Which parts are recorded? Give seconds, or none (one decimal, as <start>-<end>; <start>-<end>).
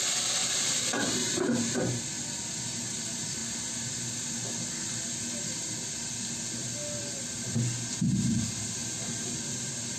0.0-0.4; 2.0-10.0